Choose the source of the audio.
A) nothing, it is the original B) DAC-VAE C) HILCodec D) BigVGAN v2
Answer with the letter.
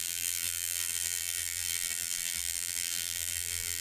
D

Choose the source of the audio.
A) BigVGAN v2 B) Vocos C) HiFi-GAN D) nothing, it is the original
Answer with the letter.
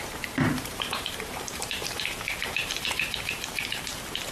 A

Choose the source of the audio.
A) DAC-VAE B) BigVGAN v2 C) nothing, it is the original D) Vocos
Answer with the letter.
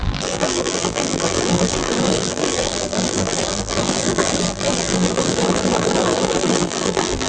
B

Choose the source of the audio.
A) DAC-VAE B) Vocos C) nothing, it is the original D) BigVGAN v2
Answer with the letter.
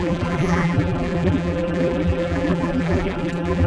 D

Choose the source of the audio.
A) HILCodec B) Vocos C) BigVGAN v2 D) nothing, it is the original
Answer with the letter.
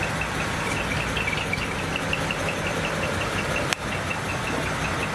D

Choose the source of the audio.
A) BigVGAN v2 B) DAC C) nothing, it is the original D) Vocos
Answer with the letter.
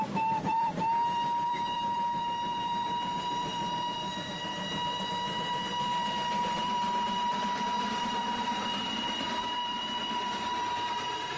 A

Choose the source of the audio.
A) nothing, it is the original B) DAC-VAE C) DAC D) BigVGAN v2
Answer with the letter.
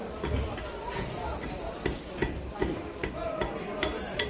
A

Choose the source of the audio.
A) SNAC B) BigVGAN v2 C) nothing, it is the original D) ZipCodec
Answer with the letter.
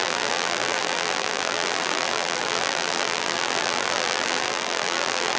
B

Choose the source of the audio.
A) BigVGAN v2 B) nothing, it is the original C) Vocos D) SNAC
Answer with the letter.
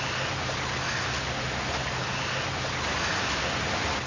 B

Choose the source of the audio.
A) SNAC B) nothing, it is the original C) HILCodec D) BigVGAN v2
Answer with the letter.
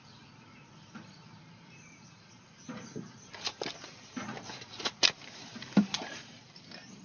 D